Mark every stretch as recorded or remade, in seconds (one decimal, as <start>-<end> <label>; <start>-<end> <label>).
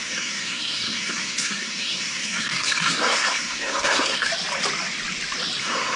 0.0-4.3 remade; 4.3-5.6 recorded; 5.6-6.0 remade